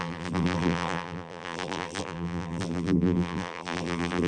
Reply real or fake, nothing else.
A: fake